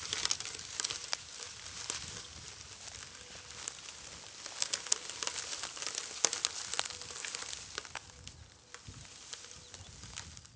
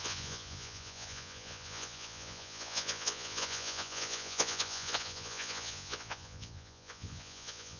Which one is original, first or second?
first